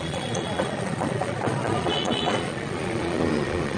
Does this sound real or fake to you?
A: fake